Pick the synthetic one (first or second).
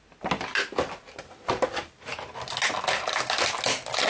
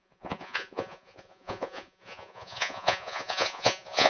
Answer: second